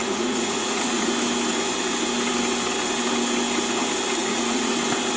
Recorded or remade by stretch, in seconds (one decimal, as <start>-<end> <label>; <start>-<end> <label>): 0.0-1.1 remade; 1.1-4.2 recorded; 4.2-4.7 remade; 4.7-5.2 recorded